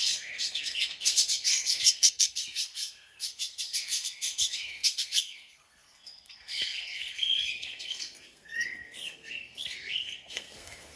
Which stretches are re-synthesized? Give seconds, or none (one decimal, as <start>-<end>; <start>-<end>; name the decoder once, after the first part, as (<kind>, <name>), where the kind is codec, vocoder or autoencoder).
0.0-11.0 (codec, SNAC)